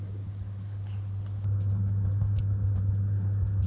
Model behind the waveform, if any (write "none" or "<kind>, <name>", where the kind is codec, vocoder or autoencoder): none